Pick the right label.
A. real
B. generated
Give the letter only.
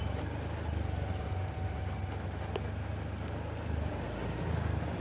A